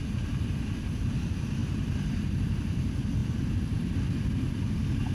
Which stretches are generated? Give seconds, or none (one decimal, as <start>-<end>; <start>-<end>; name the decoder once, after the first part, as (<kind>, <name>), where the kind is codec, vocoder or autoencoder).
1.6-2.4 (vocoder, BigVGAN v2); 3.2-3.9